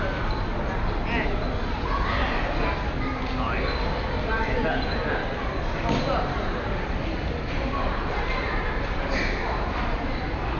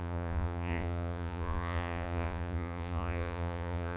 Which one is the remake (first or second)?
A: second